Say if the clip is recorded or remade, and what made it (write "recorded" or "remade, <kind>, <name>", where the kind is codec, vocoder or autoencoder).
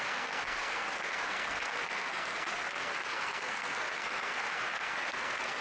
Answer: remade, codec, SNAC